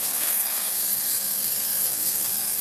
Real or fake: fake